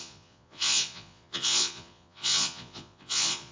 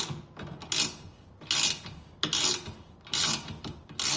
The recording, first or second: second